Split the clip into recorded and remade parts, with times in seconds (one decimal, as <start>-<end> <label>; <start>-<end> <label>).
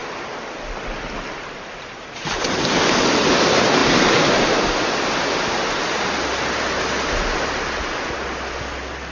0.0-3.8 recorded; 3.8-4.7 remade; 4.7-9.1 recorded